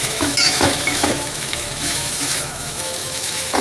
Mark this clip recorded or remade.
remade